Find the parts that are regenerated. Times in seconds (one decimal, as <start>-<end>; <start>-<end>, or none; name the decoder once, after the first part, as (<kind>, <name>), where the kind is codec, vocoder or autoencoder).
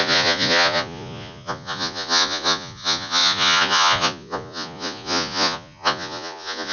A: 0.0-6.7 (vocoder, Vocos)